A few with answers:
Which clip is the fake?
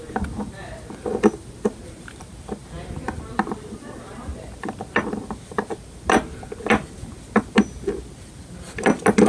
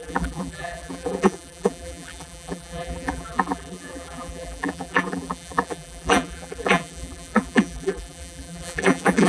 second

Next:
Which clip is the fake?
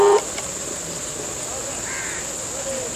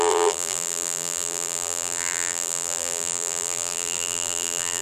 second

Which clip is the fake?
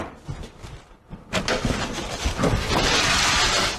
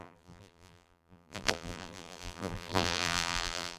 second